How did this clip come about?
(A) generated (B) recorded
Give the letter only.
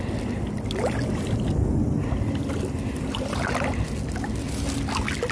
B